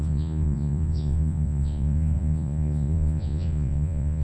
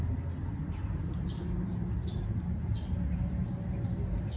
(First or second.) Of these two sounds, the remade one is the first